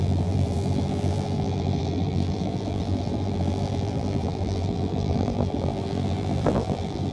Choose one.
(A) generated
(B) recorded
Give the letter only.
A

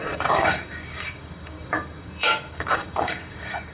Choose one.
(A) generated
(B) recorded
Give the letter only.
A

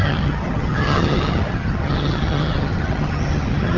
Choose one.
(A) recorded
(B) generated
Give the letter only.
B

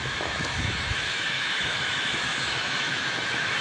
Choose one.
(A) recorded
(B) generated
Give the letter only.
B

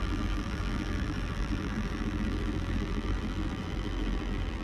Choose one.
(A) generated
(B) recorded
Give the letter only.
A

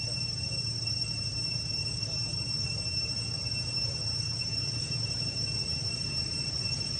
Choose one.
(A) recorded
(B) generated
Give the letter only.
B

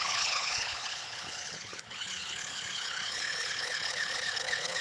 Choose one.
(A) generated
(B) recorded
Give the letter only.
A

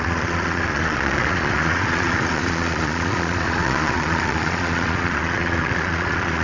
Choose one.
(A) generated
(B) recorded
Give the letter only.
A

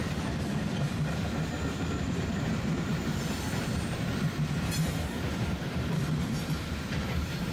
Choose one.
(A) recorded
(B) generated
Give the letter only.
B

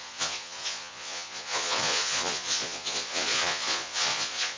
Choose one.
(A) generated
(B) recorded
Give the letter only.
A